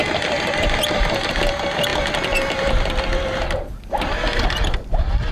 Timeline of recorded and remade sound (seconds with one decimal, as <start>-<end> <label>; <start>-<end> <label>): 0.0-5.3 recorded